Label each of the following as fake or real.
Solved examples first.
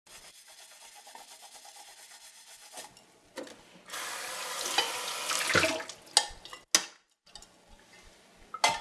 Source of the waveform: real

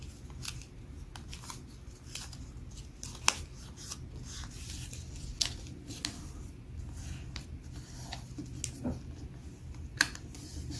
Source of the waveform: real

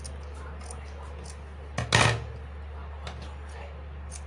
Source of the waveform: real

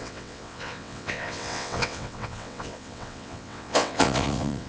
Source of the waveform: fake